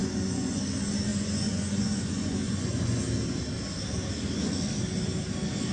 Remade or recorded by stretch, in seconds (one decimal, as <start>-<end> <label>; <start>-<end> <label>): 0.0-0.6 remade; 0.6-1.1 recorded; 1.1-3.0 remade; 3.0-5.7 recorded